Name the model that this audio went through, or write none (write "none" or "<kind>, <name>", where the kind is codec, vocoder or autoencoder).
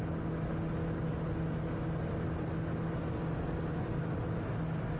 none